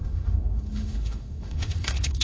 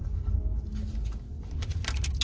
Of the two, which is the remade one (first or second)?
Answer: first